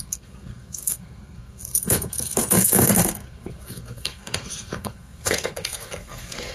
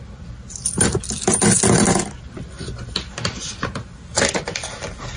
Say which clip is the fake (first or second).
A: first